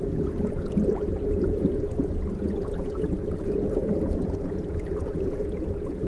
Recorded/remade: remade